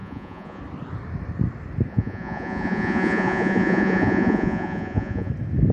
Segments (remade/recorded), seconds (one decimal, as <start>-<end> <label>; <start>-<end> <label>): 0.0-0.6 remade; 0.6-1.9 recorded; 1.9-5.3 remade; 5.3-5.7 recorded